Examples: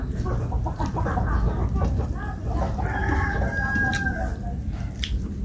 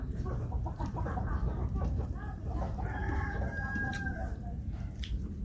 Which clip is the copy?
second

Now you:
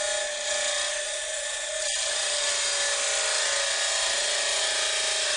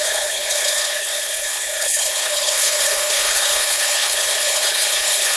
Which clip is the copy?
second